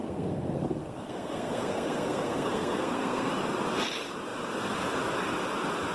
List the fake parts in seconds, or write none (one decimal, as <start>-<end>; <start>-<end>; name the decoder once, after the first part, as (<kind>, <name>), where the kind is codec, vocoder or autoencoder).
0.0-3.3 (codec, SNAC)